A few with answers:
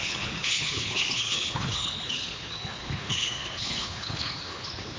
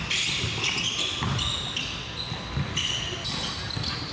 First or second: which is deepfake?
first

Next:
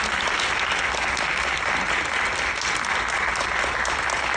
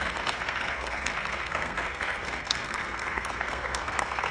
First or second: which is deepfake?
second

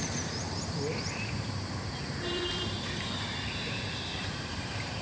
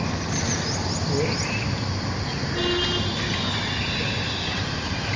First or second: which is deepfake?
first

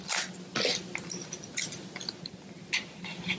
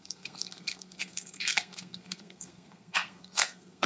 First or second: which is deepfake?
second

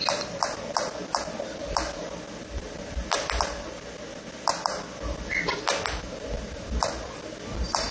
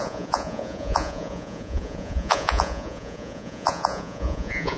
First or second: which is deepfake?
second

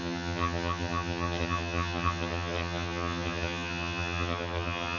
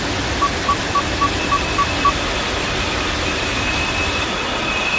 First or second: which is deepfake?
first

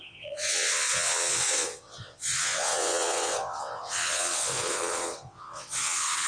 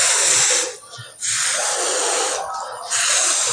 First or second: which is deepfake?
first